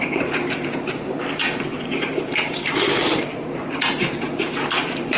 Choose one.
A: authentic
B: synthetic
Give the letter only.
B